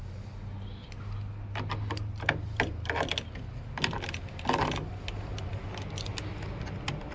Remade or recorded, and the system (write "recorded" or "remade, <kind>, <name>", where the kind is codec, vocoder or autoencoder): recorded